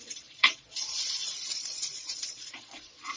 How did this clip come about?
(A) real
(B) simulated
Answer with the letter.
B